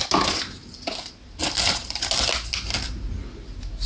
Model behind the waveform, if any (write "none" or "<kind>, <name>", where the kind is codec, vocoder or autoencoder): none